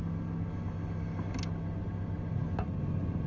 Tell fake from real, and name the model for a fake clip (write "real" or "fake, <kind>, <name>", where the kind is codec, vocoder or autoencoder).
real